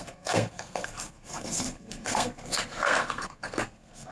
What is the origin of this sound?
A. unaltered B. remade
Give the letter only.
B